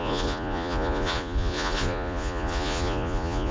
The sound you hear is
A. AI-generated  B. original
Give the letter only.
A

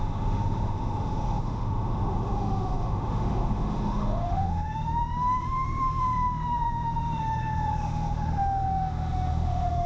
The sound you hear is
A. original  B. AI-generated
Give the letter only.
B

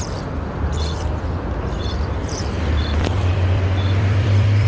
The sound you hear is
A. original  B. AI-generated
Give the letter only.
B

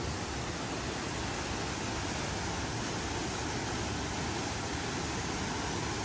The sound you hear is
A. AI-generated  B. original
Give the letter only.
B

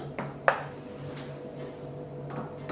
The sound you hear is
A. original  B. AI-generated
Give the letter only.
A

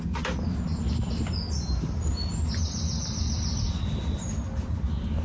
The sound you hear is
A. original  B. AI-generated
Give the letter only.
A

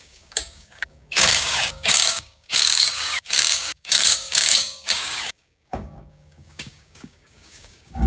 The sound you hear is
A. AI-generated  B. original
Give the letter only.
A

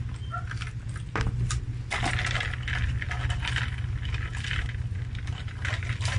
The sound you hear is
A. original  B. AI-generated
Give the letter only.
A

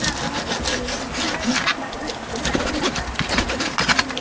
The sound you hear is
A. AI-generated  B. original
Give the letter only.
B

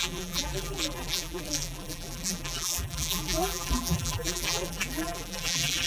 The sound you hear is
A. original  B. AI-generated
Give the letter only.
B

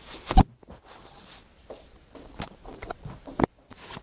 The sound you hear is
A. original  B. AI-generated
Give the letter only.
B